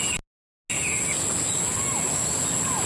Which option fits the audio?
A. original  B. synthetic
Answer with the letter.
A